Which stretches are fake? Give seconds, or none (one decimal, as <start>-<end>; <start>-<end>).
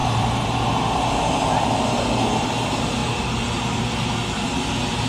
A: 0.0-0.8; 3.0-4.1